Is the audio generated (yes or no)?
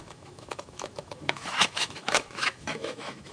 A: yes